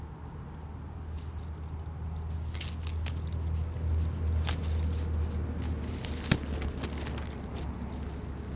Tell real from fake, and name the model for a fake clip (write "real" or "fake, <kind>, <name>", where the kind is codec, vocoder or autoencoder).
real